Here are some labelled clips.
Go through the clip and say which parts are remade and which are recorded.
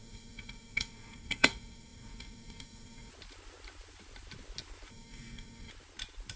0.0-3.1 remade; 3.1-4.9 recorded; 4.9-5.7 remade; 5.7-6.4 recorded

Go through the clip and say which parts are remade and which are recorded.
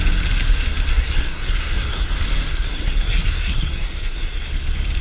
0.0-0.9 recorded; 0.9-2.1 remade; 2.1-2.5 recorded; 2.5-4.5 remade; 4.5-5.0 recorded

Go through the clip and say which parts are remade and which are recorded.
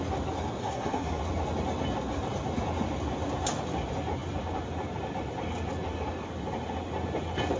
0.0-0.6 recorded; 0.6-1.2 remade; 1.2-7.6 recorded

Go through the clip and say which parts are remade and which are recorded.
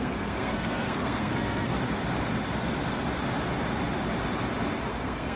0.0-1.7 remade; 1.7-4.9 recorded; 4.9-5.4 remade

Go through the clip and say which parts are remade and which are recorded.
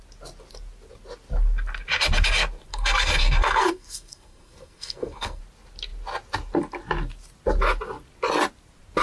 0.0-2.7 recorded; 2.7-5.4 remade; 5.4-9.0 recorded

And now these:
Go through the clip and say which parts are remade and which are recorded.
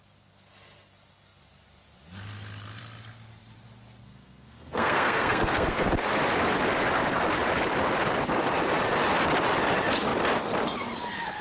0.0-4.0 recorded; 4.0-5.9 remade; 5.9-11.4 recorded